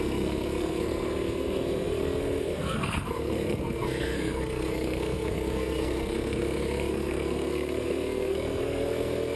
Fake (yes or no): yes